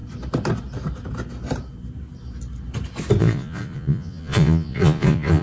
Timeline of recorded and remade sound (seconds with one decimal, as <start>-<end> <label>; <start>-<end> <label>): 0.0-3.2 recorded; 3.2-5.4 remade